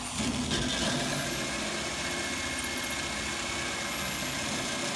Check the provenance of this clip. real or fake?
real